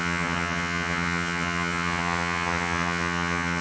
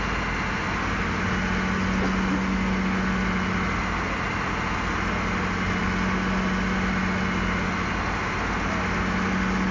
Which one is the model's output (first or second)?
first